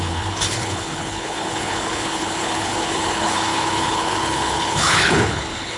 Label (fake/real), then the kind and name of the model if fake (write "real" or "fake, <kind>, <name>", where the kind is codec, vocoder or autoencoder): fake, codec, HILCodec